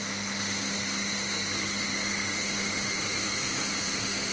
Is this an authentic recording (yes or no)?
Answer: no